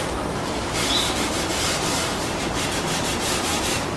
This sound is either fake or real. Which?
fake